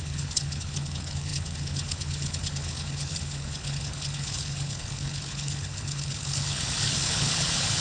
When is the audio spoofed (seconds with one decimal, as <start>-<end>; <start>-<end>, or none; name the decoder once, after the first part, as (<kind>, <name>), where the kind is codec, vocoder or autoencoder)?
0.0-7.8 (codec, HILCodec)